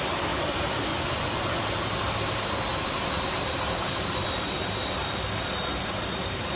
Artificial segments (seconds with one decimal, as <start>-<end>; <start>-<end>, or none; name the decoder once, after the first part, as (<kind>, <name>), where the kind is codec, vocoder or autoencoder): 0.9-1.6 (vocoder, Vocos)